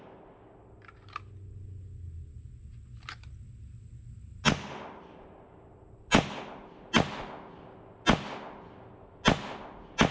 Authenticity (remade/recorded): recorded